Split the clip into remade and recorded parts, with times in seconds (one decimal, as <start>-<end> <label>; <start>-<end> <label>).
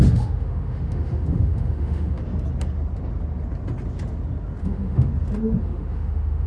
0.0-2.2 remade; 2.2-4.6 recorded; 4.6-5.1 remade; 5.1-5.6 recorded; 5.6-6.5 remade